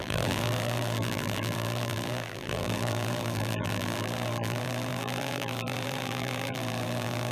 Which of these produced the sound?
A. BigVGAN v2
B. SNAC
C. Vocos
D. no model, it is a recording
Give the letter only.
A